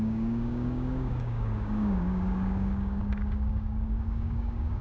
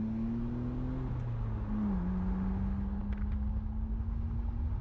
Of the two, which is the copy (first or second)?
first